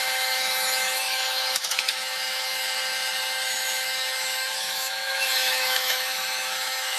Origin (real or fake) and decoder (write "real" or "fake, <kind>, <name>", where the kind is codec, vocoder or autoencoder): fake, autoencoder, DAC-VAE